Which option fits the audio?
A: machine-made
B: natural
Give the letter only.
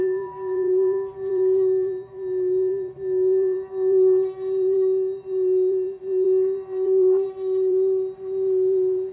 A